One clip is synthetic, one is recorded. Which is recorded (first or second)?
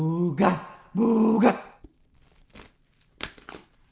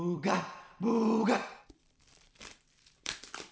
first